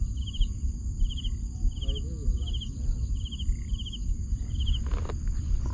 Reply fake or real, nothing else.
real